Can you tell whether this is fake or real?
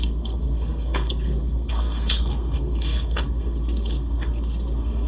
fake